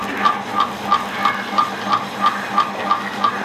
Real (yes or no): yes